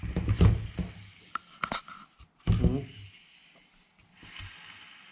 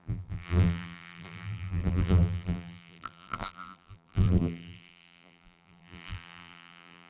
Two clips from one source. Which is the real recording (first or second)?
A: first